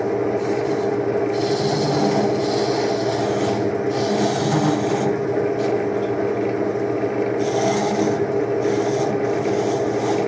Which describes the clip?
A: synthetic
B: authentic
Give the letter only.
B